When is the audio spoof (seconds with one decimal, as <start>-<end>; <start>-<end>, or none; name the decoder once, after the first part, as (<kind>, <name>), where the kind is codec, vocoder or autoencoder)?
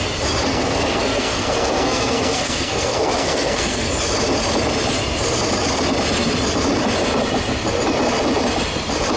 0.5-3.9 (codec, SNAC)